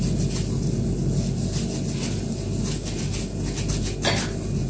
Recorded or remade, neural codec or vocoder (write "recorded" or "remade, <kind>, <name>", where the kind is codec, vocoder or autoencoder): recorded